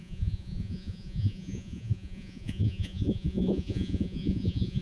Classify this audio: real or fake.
fake